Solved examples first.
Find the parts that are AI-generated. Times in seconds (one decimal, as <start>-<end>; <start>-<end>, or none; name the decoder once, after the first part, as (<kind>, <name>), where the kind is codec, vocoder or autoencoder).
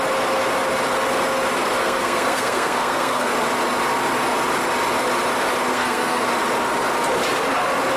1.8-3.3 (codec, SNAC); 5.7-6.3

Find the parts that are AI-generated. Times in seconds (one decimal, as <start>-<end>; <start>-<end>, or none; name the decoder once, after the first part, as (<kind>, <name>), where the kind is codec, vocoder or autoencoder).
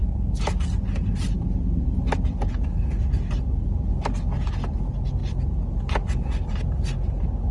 none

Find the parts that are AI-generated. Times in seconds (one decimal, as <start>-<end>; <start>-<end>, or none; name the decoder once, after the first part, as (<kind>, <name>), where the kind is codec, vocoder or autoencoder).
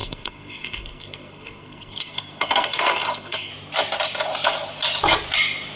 0.0-3.5 (codec, SNAC)